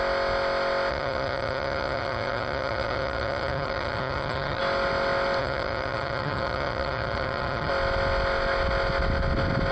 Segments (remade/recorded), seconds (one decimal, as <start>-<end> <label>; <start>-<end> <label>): 0.0-0.9 recorded; 0.9-4.6 remade; 4.6-5.4 recorded; 5.4-7.7 remade; 7.7-9.7 recorded